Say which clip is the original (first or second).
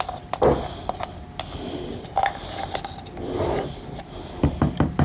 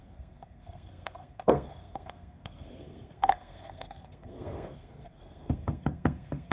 first